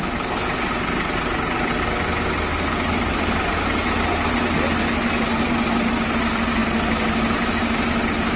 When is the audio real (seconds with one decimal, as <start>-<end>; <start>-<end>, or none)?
0.0-8.4